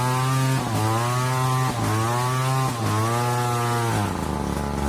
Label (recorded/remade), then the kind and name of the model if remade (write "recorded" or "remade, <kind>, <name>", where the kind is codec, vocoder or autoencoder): recorded